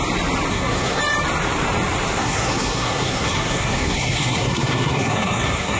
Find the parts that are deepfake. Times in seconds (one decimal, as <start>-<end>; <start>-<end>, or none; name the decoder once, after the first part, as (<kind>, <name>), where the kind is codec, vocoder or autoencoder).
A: 0.5-1.0 (codec, SNAC); 2.2-5.8